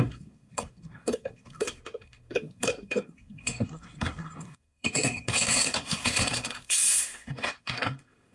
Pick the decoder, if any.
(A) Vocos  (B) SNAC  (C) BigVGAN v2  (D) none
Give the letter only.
B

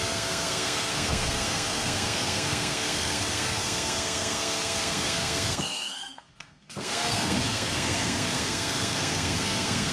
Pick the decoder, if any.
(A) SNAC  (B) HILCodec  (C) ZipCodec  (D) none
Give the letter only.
A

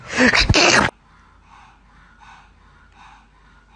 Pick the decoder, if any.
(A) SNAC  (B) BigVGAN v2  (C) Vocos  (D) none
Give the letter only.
D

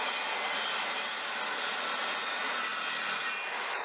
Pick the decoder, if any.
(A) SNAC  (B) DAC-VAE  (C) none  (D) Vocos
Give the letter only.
C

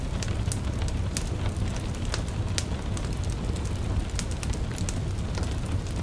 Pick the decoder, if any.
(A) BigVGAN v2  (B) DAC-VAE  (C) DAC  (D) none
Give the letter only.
D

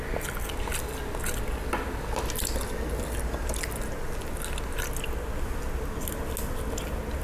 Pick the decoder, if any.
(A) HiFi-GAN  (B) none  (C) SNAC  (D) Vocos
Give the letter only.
B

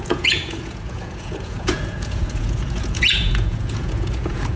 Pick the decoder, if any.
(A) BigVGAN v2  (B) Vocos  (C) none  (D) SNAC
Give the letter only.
B